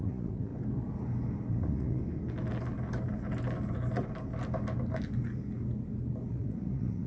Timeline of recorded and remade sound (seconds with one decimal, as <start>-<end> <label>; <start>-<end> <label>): 0.0-0.5 remade; 0.5-1.5 recorded; 1.5-2.0 remade; 2.0-6.3 recorded; 6.3-7.1 remade